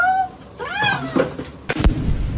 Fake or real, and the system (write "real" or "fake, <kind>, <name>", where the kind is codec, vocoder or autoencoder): real